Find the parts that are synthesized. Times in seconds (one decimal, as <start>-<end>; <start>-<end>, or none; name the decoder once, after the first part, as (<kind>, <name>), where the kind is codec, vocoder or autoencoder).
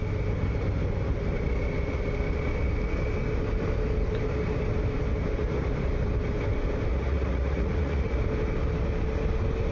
6.9-8.2 (vocoder, Vocos)